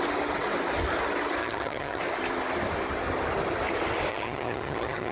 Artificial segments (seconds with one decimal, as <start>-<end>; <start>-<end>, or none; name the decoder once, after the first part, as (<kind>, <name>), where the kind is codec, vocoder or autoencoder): 1.4-2.0 (vocoder, HiFi-GAN); 4.1-5.1